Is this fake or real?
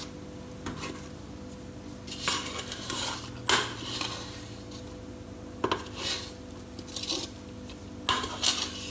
real